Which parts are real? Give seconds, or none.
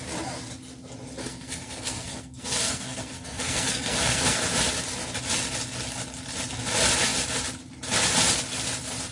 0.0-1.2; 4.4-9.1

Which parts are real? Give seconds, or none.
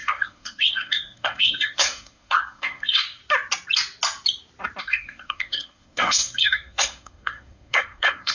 3.2-4.8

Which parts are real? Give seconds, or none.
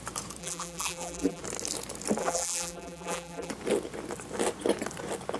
0.0-0.4; 1.4-2.2; 3.5-5.4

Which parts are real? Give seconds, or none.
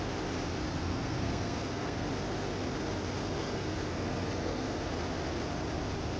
0.0-0.6; 2.1-3.4; 4.9-6.2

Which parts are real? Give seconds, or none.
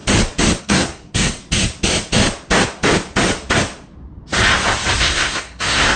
0.0-0.6; 1.4-5.0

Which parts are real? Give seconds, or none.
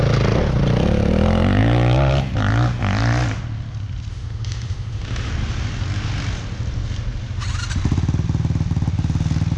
0.0-4.1; 5.3-9.6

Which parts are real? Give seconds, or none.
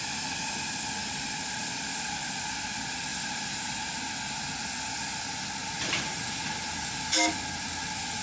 0.0-1.0; 1.7-3.1; 3.7-5.6; 6.2-8.2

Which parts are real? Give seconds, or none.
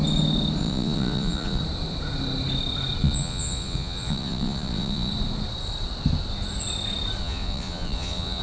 0.0-0.6; 1.6-3.0; 5.1-7.2